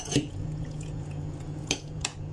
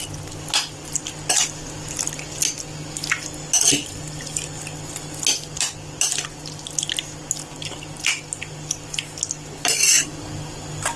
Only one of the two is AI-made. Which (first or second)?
first